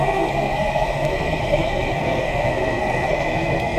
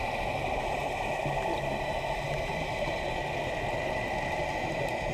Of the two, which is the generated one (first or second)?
first